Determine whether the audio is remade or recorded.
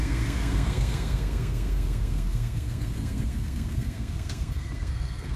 remade